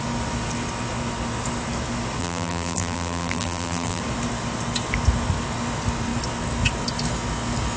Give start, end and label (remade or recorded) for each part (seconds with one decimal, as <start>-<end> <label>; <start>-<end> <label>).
0.0-2.2 recorded; 2.2-4.0 remade; 4.0-7.8 recorded